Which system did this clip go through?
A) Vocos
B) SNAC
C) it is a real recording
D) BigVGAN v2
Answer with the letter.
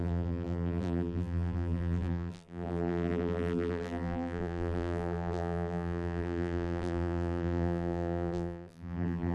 D